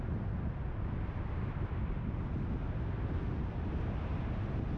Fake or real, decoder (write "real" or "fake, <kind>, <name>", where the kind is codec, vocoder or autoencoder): real